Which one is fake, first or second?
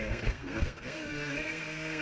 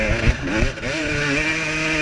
first